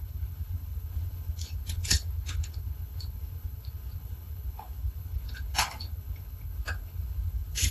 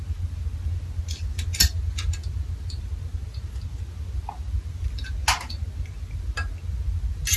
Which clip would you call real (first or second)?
second